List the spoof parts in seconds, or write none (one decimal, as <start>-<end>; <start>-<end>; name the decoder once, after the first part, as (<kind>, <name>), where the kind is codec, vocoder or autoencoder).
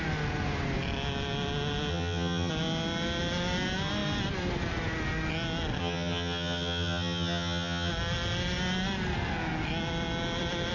1.9-2.5 (vocoder, HiFi-GAN); 5.8-7.9